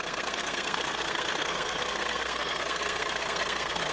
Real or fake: fake